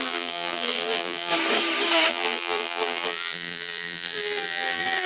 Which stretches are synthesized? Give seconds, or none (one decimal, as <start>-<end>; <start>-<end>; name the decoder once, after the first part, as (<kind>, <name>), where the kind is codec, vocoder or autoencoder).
0.0-1.3 (vocoder, BigVGAN v2); 2.1-5.1